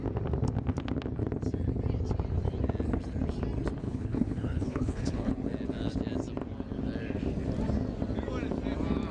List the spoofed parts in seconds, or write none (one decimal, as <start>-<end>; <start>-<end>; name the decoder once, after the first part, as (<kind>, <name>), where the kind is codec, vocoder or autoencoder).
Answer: 3.8-5.3 (codec, HILCodec)